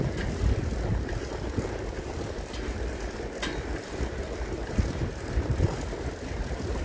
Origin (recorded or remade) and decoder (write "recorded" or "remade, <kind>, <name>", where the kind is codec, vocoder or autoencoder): recorded